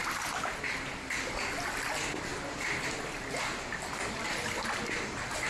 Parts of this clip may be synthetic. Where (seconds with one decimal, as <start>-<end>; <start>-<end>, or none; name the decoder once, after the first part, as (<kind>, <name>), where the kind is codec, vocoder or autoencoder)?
none